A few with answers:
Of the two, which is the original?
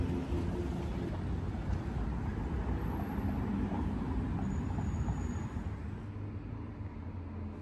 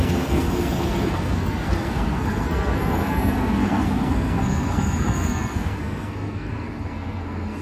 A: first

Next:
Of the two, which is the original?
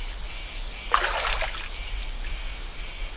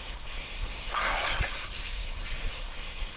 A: first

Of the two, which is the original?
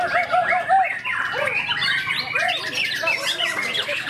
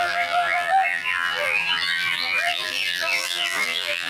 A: first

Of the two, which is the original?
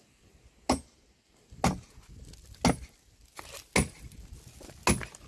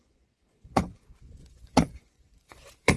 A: first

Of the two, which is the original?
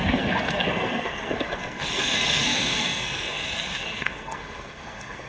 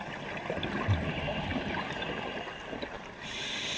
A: second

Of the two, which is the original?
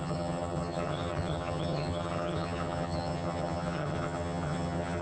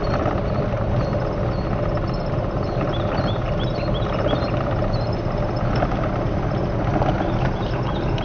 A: second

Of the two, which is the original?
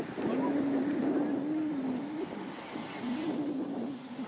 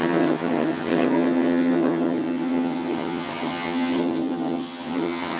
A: first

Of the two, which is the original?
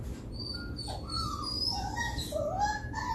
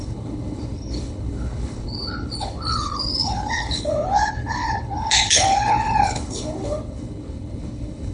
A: first